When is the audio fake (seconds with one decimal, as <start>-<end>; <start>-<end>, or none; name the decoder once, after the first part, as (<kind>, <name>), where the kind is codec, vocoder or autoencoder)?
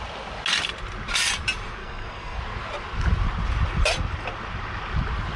1.8-2.4 (codec, SNAC)